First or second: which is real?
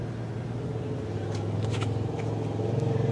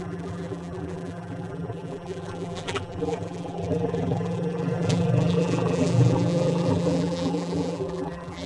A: first